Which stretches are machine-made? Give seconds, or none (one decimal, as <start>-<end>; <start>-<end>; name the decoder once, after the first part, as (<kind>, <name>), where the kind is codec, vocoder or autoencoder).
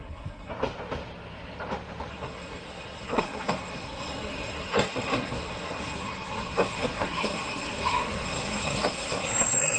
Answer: 0.0-0.5 (codec, SNAC); 2.1-9.8